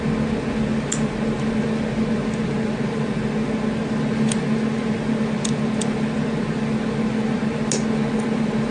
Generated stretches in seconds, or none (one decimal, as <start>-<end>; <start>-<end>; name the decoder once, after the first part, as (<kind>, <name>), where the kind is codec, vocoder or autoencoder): none